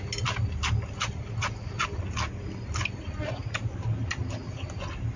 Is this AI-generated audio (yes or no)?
no